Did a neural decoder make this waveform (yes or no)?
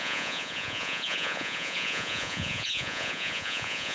yes